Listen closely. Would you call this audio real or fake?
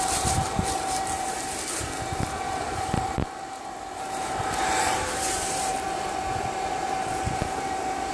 fake